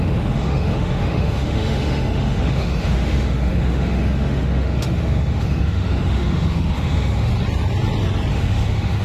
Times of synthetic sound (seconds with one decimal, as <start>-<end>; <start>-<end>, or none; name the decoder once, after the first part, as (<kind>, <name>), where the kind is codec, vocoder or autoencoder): 0.0-7.3 (autoencoder, DAC-VAE); 8.3-9.0